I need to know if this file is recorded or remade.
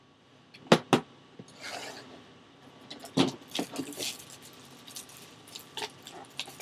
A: recorded